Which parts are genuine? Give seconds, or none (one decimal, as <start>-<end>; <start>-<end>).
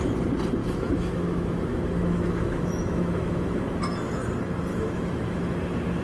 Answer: 0.0-0.6; 3.6-4.7; 5.4-6.0